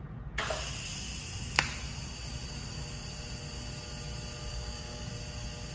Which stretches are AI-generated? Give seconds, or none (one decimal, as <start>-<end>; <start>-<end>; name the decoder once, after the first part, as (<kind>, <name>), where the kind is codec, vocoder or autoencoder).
4.5-5.1 (codec, DAC)